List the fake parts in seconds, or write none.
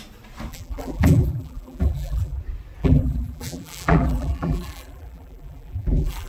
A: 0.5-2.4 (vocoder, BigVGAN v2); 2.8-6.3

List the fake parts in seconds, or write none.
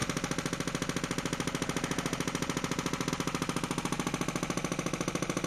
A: none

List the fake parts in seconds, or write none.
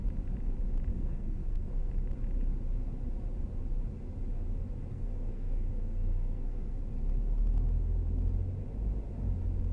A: 0.9-1.9 (codec, SNAC); 4.9-6.8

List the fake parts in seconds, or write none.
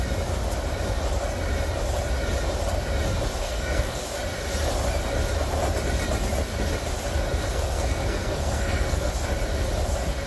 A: 3.4-4.0 (codec, SNAC); 7.5-9.1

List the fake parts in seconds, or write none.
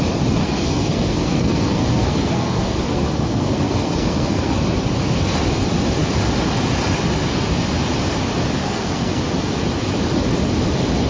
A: 0.4-4.6 (codec, SNAC); 8.6-9.2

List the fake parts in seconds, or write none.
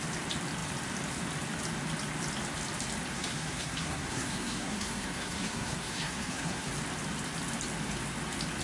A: 3.1-6.7 (codec, SNAC)